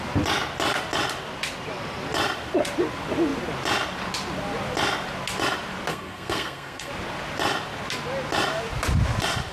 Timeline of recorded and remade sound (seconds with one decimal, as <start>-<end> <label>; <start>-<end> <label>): 0.0-5.9 recorded; 5.9-6.9 remade; 6.9-9.5 recorded